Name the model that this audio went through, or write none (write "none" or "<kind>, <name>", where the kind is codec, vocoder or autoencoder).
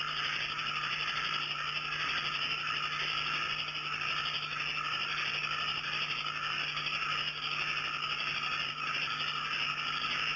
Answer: none